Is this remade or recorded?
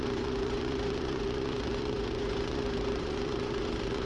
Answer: remade